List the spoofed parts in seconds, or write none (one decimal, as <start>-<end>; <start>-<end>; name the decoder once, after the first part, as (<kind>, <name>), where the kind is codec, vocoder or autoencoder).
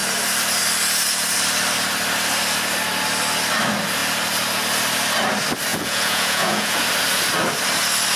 5.7-6.8 (vocoder, Vocos)